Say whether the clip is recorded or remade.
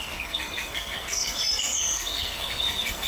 remade